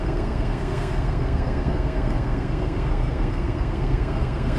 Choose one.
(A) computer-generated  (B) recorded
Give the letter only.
A